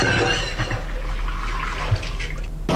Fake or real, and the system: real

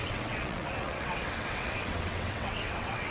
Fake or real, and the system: fake, vocoder, WaveNeXt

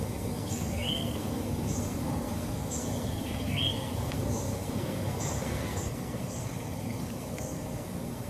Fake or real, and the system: fake, codec, SNAC